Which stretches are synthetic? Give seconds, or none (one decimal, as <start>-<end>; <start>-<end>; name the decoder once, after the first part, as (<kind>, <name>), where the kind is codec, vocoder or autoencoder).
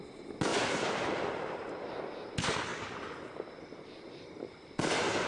none